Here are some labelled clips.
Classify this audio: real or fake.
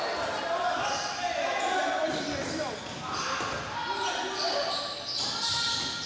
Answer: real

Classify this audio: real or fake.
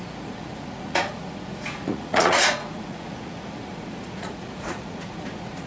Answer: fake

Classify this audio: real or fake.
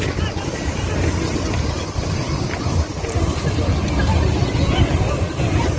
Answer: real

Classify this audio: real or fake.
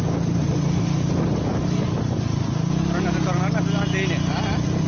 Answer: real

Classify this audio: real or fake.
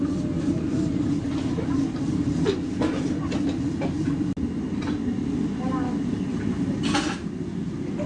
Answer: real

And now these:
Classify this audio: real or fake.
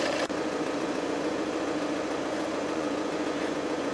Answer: fake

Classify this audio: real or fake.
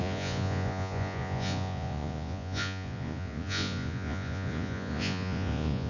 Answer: fake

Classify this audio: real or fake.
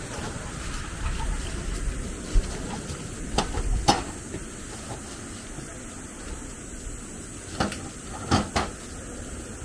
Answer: real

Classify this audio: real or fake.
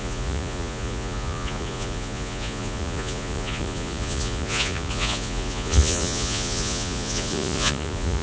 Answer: fake